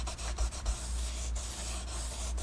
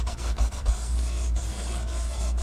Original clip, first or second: first